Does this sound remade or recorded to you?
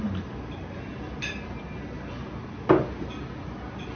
recorded